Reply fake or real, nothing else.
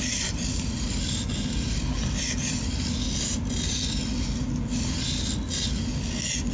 real